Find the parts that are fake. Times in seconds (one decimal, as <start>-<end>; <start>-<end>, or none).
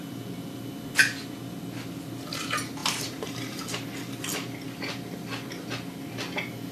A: 2.8-3.7